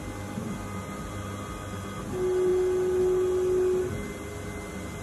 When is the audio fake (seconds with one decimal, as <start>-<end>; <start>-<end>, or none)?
none